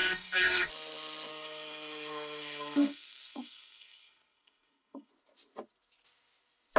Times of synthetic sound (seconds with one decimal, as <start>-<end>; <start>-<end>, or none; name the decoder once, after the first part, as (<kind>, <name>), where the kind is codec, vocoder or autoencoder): 0.0-0.7 (codec, SNAC); 1.3-5.1